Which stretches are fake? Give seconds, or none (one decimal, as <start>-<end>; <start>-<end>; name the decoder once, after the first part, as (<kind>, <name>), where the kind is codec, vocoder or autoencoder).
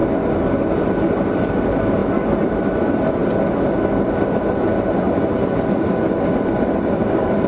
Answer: 0.8-3.2 (vocoder, BigVGAN v2); 6.7-7.5